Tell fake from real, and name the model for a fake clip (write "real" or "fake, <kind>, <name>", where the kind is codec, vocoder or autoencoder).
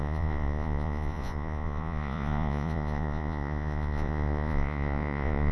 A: fake, vocoder, Vocos